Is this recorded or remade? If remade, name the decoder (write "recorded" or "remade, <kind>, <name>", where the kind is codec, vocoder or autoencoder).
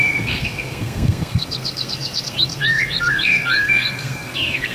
remade, codec, SNAC